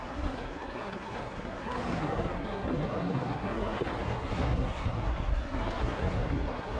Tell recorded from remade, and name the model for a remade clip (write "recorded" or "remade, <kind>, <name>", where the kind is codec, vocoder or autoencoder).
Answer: remade, codec, SNAC